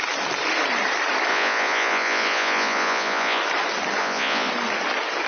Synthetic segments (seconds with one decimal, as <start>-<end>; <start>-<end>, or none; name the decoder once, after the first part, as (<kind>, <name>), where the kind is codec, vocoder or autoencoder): 1.3-3.4 (vocoder, Vocos); 4.0-4.5